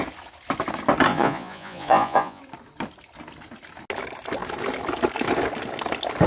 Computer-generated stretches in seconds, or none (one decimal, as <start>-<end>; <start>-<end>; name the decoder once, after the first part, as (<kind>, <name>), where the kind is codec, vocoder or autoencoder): 1.1-2.4 (vocoder, Vocos)